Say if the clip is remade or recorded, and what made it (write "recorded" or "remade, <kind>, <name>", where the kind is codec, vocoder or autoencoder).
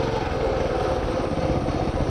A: recorded